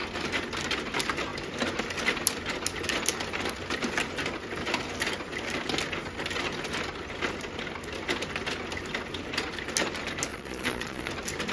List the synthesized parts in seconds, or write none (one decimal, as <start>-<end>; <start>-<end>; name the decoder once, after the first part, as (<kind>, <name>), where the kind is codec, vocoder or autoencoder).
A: 10.3-11.1 (vocoder, Vocos)